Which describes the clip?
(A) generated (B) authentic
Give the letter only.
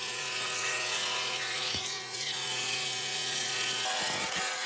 A